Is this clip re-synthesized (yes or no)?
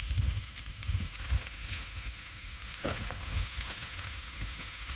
yes